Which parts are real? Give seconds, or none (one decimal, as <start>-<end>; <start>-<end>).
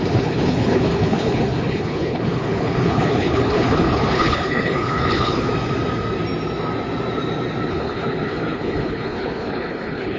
5.5-7.7